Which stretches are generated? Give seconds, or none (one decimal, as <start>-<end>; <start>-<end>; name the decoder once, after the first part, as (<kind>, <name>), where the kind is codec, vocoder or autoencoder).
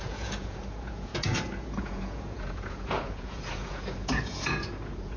0.0-5.2 (vocoder, Vocos)